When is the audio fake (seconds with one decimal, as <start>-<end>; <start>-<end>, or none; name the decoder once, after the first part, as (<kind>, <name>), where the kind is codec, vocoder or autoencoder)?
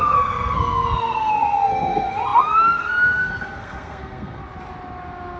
0.0-4.4 (codec, SNAC)